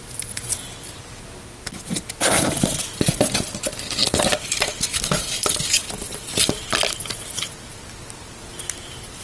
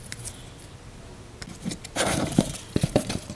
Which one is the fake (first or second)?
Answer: second